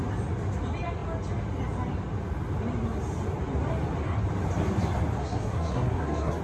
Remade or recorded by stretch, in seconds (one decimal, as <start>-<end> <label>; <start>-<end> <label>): 0.0-5.2 recorded; 5.2-6.4 remade